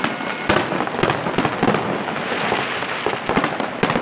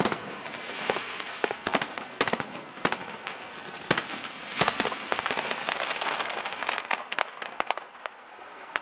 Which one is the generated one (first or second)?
second